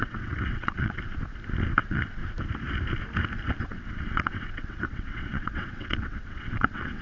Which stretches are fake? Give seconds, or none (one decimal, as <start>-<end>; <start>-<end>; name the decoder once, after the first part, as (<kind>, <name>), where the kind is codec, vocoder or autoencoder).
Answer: 0.0-1.0 (vocoder, WaveNeXt); 1.8-2.2; 3.6-7.0